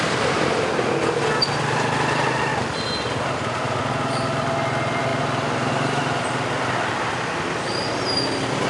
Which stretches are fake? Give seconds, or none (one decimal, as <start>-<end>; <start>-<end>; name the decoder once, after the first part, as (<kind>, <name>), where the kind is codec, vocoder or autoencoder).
none